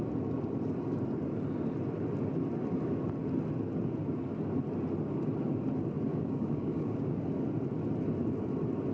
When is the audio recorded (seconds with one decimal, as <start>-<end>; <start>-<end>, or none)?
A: 0.0-6.1; 7.2-8.9